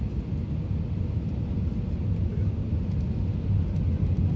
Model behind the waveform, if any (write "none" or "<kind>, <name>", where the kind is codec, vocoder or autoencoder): none